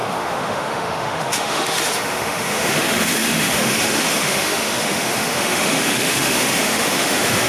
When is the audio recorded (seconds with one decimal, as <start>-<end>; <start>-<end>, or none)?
none